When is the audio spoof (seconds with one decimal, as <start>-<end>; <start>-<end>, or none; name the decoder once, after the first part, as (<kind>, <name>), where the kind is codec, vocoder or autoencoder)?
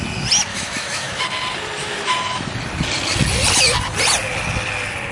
0.5-1.2 (autoencoder, DAC-VAE); 1.8-2.5